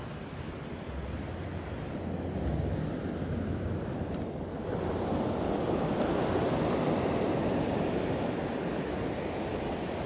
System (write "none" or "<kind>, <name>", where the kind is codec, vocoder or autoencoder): none